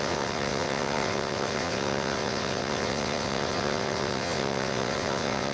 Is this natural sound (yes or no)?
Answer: no